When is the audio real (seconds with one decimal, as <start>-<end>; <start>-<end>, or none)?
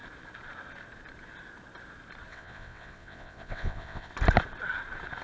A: 0.0-2.3; 4.1-5.2